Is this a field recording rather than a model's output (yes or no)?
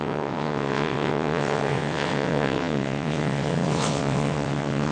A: no